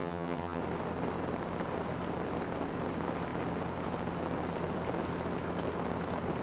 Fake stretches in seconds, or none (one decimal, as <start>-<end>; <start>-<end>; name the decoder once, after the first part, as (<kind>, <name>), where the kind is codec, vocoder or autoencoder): 0.0-0.6 (vocoder, HiFi-GAN)